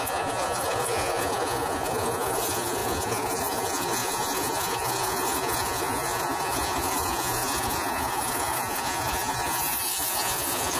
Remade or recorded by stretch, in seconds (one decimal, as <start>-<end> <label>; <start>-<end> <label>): 0.0-10.8 remade